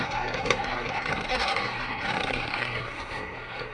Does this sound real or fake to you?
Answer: fake